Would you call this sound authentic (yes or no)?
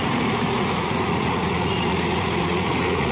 no